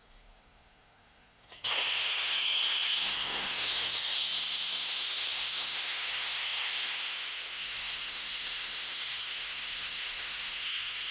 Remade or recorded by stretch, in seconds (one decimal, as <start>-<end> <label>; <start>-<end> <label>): 0.0-11.1 remade